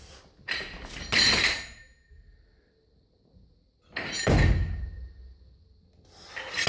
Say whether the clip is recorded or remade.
recorded